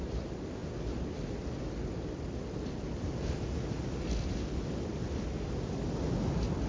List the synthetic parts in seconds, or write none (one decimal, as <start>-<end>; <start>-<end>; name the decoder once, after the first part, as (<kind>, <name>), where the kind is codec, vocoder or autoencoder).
none